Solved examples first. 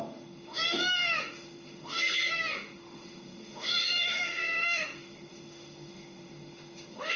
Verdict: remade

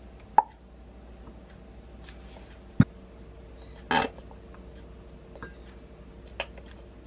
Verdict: recorded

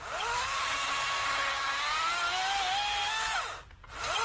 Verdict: recorded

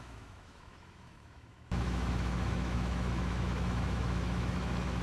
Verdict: remade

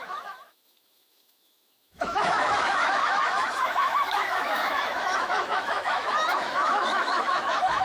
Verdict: remade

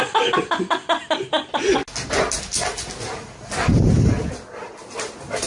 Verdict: recorded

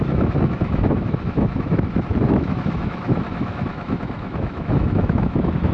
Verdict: remade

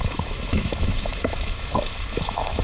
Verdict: remade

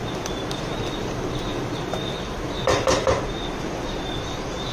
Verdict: recorded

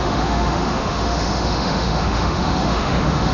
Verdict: remade